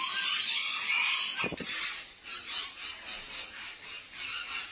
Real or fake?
real